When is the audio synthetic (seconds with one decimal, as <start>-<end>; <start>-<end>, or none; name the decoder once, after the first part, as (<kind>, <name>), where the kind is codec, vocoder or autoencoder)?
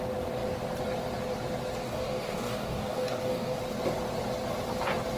1.8-3.6 (codec, DAC)